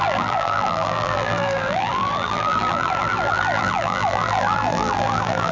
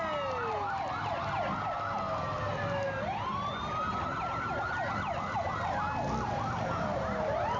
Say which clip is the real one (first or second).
second